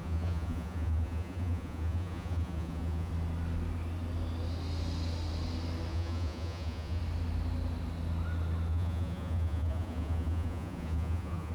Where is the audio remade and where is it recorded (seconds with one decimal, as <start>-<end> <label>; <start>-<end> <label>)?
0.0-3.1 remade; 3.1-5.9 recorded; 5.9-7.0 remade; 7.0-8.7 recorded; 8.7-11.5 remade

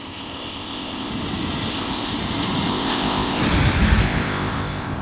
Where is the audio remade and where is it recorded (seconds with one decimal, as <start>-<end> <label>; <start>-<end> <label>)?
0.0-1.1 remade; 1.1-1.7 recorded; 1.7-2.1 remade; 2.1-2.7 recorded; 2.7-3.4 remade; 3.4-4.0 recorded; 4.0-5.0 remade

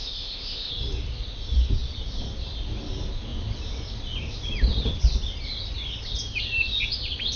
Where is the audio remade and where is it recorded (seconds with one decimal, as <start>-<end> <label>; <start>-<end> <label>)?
0.0-0.7 remade; 0.7-7.4 recorded

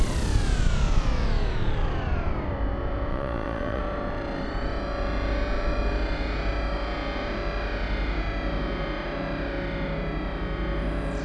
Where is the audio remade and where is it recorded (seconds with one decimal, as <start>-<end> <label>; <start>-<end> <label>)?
0.0-3.1 recorded; 3.1-3.8 remade; 3.8-11.2 recorded

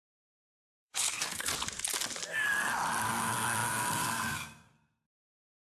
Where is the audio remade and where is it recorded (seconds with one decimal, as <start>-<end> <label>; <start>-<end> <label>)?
0.0-1.5 remade; 1.5-3.1 recorded; 3.1-5.8 remade

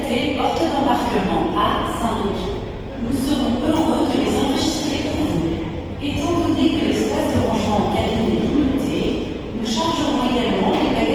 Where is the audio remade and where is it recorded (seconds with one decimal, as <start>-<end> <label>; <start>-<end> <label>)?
0.0-2.2 remade; 2.2-6.6 recorded; 6.6-11.1 remade

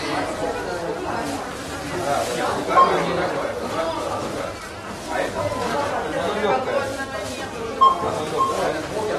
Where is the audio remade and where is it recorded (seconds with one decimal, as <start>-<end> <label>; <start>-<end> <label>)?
0.0-9.2 recorded

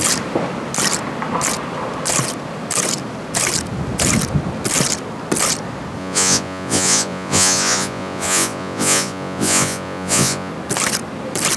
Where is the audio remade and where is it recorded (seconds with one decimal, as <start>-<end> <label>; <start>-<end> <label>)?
0.0-6.0 recorded; 6.0-10.5 remade; 10.5-11.6 recorded